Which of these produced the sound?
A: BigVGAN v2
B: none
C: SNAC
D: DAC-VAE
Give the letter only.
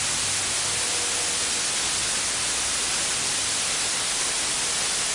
B